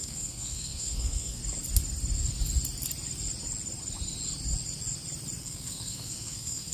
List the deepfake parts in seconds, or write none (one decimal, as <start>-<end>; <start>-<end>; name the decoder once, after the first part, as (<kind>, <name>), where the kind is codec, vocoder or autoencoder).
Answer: 0.0-1.4 (codec, SNAC); 5.4-6.7